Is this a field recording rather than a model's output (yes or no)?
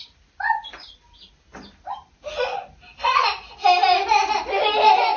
yes